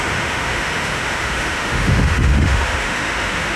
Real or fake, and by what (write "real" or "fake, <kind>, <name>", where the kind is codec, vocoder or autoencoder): fake, autoencoder, DAC-VAE